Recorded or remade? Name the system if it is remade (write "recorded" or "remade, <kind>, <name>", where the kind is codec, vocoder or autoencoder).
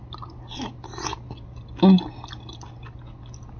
recorded